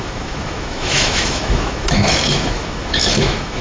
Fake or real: fake